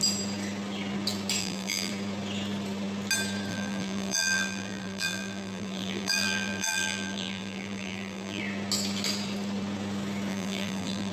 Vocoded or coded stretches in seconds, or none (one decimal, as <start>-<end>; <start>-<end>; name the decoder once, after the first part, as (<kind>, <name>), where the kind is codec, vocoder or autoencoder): 1.4-1.9 (vocoder, BigVGAN v2); 3.5-8.4; 10.3-11.1